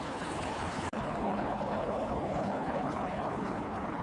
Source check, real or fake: fake